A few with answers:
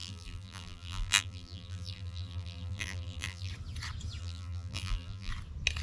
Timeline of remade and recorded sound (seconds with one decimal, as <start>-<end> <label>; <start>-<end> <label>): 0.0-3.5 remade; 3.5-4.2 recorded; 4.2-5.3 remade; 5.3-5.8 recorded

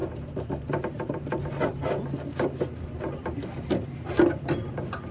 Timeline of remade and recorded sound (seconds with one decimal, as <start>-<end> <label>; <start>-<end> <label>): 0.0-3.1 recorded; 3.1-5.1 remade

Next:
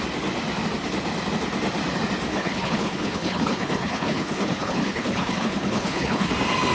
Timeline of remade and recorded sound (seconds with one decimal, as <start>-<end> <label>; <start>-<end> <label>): 0.0-2.3 recorded; 2.3-6.3 remade; 6.3-6.7 recorded

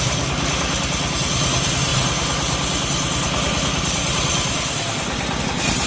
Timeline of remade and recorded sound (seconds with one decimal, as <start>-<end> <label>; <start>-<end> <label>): 0.0-5.9 recorded